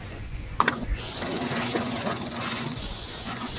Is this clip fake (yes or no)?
yes